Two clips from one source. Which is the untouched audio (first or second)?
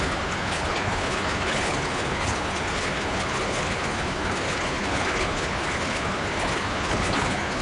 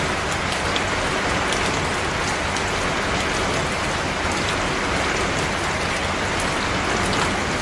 second